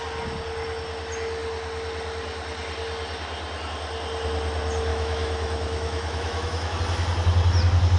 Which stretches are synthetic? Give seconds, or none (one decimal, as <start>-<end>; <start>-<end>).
4.9-6.8

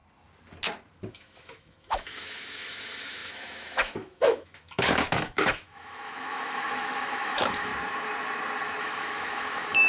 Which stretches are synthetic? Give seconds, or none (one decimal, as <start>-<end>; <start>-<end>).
1.1-7.7; 8.8-9.9